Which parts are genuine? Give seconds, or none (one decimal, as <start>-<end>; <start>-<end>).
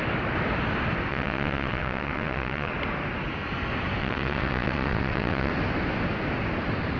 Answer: 0.0-1.1; 2.7-4.0; 5.5-7.0